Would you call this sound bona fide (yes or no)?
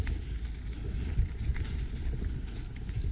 yes